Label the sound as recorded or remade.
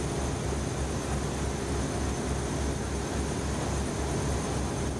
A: recorded